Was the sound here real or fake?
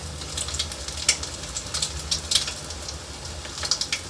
real